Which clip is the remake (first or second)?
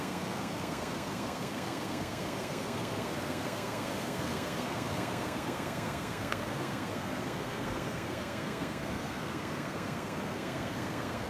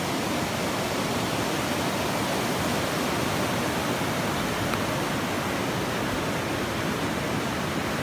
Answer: first